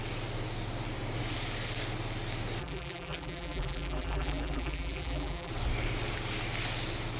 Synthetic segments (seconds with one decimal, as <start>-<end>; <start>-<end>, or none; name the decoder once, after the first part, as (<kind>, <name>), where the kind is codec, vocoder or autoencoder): 2.6-5.5 (vocoder, BigVGAN v2)